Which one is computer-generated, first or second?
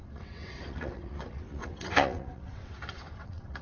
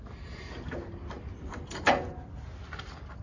first